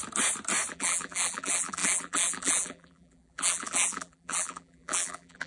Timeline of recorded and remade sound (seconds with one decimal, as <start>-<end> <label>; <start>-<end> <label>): 0.0-0.7 recorded; 0.7-5.5 remade